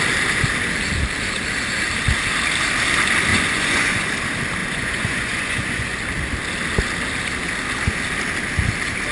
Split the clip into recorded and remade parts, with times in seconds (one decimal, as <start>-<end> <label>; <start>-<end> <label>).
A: 0.0-3.3 recorded; 3.3-4.1 remade; 4.1-4.6 recorded; 4.6-6.0 remade; 6.0-9.1 recorded